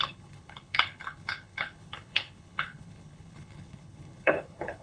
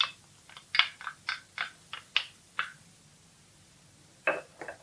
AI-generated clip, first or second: first